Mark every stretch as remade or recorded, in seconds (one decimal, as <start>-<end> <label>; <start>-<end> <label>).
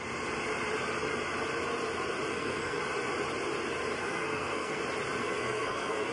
0.0-2.3 recorded; 2.3-2.8 remade; 2.8-4.0 recorded; 4.0-4.8 remade; 4.8-5.2 recorded; 5.2-6.1 remade